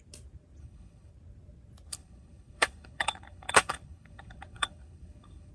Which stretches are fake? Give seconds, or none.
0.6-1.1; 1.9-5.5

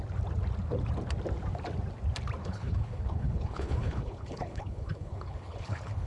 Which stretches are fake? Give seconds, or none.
2.4-6.1

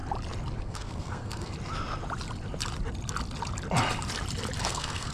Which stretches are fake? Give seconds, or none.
0.6-1.5; 4.6-5.1

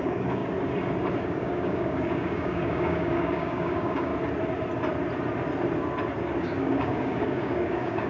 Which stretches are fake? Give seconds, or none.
0.0-0.4; 1.2-4.1; 6.4-8.1